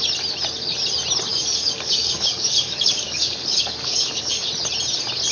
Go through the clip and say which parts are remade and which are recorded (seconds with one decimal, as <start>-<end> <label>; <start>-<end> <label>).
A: 0.0-1.3 recorded; 1.3-4.5 remade; 4.5-5.3 recorded